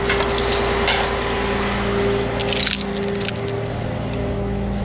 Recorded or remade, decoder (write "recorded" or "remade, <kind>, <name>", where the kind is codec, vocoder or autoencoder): recorded